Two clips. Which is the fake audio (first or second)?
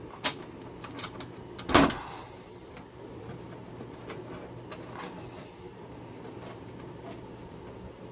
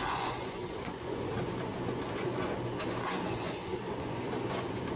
second